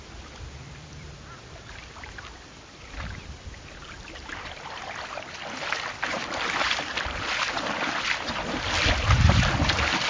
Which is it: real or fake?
fake